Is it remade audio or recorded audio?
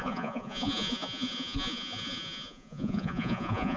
remade